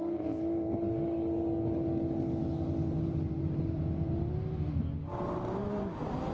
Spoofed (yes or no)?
no